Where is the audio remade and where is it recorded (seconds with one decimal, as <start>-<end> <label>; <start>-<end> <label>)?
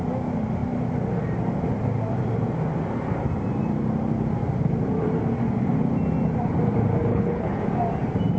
0.0-7.1 recorded; 7.1-7.6 remade; 7.6-8.4 recorded